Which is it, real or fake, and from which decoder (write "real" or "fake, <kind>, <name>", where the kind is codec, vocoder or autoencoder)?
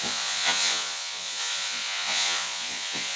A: fake, vocoder, Vocos